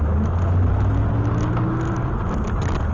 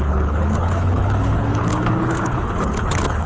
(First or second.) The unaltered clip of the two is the first